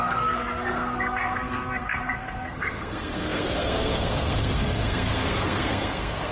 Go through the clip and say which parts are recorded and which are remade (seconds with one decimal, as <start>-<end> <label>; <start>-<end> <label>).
0.0-6.3 remade